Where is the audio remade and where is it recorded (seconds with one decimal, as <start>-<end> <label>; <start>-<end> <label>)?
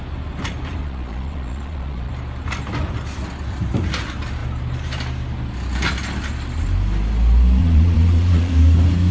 0.0-0.8 recorded; 0.8-2.1 remade; 2.1-7.6 recorded; 7.6-8.5 remade; 8.5-9.1 recorded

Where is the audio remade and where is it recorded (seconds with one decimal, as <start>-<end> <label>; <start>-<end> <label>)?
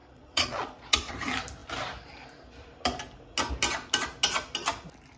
0.0-1.1 remade; 1.1-5.2 recorded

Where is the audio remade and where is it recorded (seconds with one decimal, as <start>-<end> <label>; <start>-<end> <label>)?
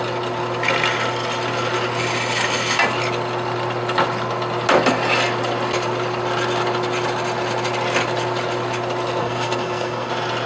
0.0-9.2 recorded; 9.2-10.1 remade; 10.1-10.5 recorded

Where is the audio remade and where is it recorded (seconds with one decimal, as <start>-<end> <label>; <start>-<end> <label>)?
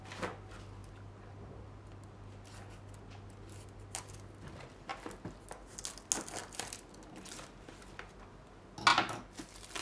0.0-9.8 recorded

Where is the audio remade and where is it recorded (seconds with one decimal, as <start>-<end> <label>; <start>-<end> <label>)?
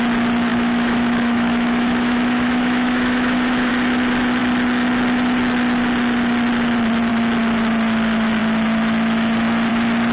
0.0-0.5 recorded; 0.5-3.7 remade; 3.7-10.1 recorded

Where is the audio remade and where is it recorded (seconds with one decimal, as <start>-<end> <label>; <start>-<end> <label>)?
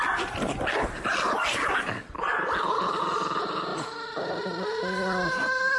0.0-3.7 recorded; 3.7-4.8 remade; 4.8-5.8 recorded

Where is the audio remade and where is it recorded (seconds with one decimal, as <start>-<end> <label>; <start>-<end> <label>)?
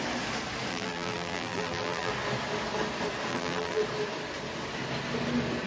0.0-0.7 recorded; 0.7-2.1 remade; 2.1-3.3 recorded; 3.3-3.8 remade; 3.8-5.7 recorded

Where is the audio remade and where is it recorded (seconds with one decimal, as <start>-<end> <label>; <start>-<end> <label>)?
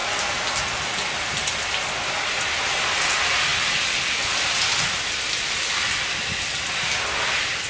0.0-3.5 recorded; 3.5-7.0 remade; 7.0-7.7 recorded